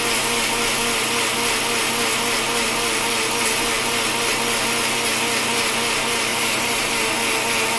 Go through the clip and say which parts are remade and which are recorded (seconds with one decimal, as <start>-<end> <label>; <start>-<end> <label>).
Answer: 0.0-6.3 recorded; 6.3-6.9 remade; 6.9-7.8 recorded